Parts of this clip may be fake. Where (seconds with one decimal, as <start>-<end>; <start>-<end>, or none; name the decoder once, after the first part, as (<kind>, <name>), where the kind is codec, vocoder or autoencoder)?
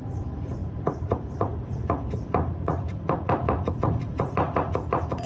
0.0-5.3 (vocoder, Vocos)